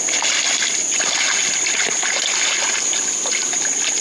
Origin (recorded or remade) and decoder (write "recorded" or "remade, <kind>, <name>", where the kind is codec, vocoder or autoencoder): recorded